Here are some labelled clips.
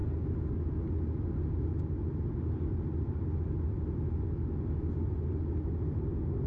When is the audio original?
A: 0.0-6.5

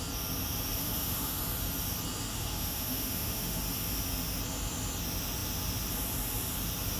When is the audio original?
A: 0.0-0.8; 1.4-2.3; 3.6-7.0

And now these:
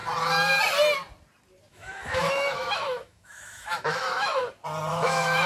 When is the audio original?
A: 0.0-1.7; 4.4-4.9

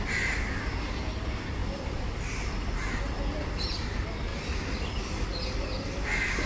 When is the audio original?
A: 0.0-6.5